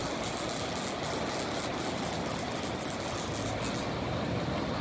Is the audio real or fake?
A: real